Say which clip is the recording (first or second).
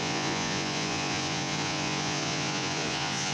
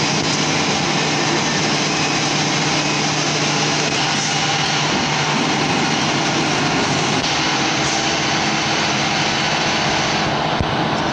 second